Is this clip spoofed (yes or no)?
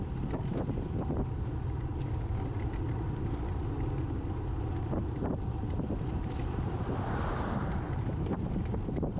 yes